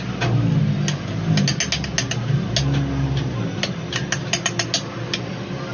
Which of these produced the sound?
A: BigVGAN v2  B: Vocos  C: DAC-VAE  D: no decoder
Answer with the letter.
D